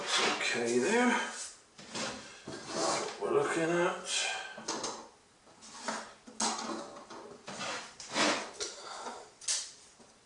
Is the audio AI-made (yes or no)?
no